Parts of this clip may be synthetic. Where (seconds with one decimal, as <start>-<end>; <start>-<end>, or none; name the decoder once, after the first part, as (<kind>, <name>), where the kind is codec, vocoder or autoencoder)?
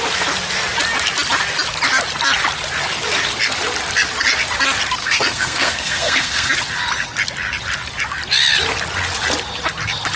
5.0-6.5 (codec, SNAC)